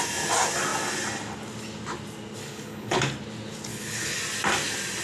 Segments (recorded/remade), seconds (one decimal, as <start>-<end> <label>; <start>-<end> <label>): 0.0-2.4 recorded; 2.4-3.0 remade; 3.0-3.7 recorded; 3.7-4.2 remade; 4.2-5.0 recorded